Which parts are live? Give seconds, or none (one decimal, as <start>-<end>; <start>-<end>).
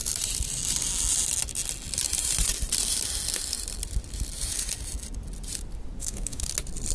0.0-6.0; 6.5-6.9